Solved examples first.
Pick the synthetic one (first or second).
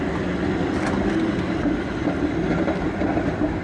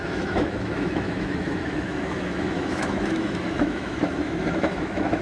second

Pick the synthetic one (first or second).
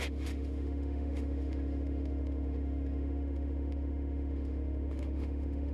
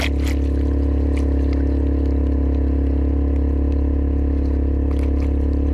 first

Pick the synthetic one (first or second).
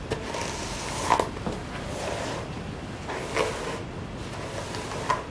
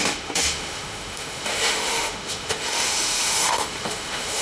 second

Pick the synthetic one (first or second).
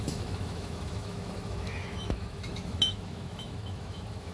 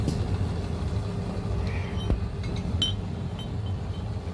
first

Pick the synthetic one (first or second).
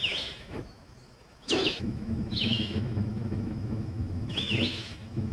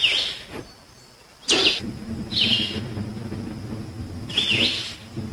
first